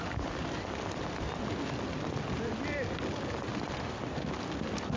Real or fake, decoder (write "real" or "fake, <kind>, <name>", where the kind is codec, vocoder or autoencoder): real